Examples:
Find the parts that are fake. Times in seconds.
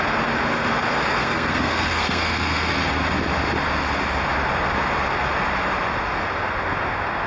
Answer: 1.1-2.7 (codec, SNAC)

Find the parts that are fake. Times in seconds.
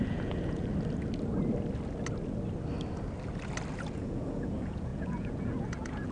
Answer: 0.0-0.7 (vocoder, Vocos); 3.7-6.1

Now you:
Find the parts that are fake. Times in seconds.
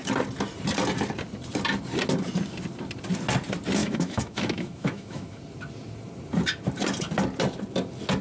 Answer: 3.8-5.4 (autoencoder, DAC-VAE)